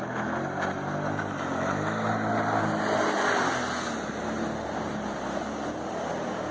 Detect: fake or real real